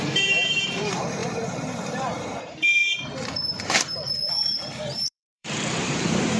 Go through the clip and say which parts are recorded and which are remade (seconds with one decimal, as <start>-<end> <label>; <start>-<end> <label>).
0.0-2.8 remade; 2.8-4.3 recorded; 4.3-6.4 remade